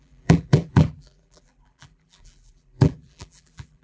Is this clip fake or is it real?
fake